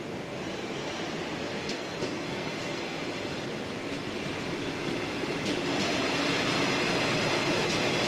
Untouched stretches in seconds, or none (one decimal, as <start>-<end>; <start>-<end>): 0.0-1.6; 3.0-8.1